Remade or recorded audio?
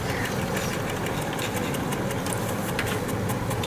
remade